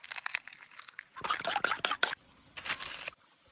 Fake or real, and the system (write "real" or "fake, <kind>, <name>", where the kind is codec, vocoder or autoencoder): real